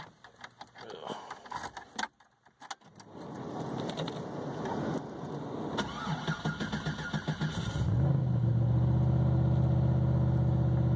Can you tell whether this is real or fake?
real